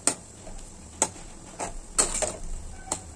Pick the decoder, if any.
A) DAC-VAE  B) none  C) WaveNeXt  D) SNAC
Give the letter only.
B